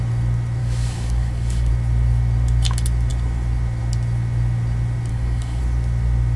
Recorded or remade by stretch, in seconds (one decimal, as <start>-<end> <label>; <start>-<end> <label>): 0.0-0.6 recorded; 0.6-1.7 remade; 1.7-5.1 recorded; 5.1-5.6 remade; 5.6-6.4 recorded